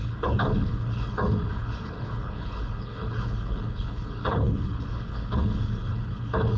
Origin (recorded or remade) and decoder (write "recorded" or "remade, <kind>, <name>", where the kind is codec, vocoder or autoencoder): remade, codec, HILCodec